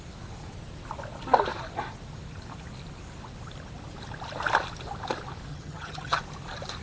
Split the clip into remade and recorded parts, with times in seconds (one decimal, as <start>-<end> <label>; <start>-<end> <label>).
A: 0.0-5.5 recorded; 5.5-6.2 remade; 6.2-6.8 recorded